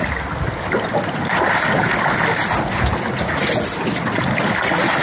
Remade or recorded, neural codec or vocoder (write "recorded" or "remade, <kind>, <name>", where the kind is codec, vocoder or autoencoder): recorded